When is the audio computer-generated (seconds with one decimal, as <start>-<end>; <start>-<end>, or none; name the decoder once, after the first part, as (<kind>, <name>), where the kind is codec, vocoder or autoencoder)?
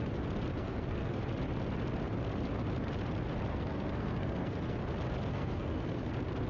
0.5-1.2 (codec, SNAC); 3.5-4.8; 5.3-6.1